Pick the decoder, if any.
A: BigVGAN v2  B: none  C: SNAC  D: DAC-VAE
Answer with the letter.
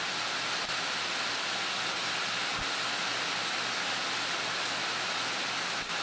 B